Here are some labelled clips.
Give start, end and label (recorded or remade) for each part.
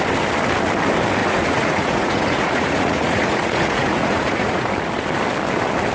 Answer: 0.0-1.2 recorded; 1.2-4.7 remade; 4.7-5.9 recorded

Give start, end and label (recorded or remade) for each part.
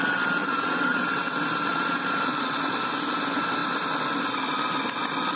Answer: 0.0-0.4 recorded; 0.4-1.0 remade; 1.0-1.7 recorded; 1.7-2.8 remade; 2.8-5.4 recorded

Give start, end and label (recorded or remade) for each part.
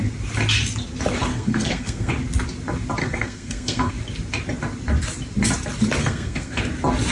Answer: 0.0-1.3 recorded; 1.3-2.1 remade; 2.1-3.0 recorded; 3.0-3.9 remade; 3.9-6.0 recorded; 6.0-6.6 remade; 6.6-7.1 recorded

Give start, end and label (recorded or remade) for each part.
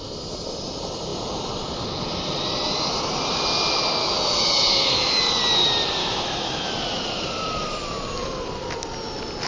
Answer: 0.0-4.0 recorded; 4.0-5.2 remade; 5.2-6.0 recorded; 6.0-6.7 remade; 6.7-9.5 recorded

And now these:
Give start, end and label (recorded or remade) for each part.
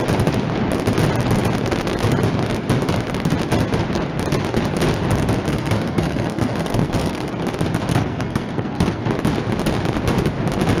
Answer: 0.0-5.5 recorded; 5.5-7.3 remade; 7.3-7.9 recorded; 7.9-9.0 remade; 9.0-10.8 recorded